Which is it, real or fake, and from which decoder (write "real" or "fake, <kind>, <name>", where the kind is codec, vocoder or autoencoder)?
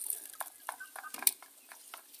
real